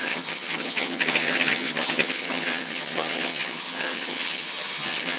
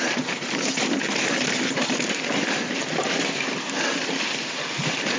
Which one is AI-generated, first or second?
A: first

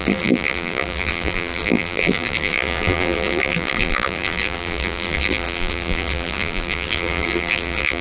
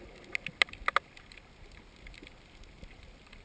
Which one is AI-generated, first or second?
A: first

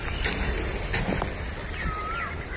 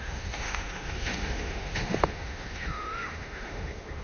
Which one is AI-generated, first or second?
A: second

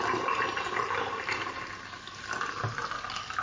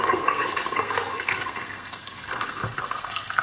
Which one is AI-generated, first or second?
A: second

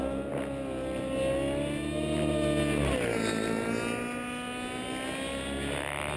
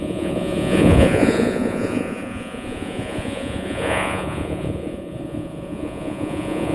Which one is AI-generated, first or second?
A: second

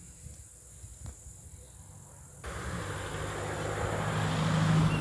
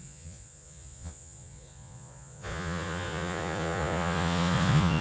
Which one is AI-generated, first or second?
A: second